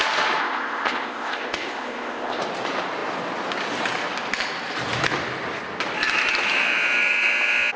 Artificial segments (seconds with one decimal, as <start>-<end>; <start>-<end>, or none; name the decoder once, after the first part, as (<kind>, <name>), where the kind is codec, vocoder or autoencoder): 0.4-2.4 (codec, ZipCodec)